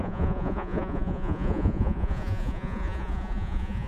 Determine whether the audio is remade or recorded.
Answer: remade